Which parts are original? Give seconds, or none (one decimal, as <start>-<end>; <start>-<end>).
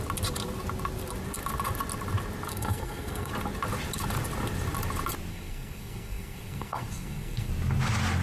0.0-2.5; 3.3-5.3; 7.5-8.2